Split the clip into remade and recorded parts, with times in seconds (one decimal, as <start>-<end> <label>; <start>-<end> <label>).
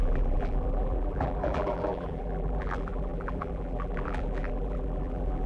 0.0-5.5 remade